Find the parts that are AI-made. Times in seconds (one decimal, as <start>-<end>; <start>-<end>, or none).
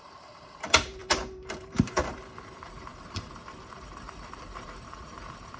0.0-5.6